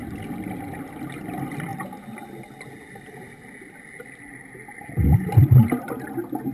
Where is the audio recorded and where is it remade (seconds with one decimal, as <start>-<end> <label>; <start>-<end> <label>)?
0.0-6.5 recorded